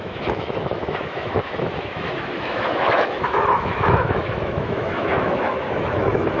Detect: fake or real fake